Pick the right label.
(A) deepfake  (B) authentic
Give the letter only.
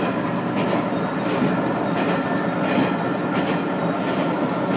B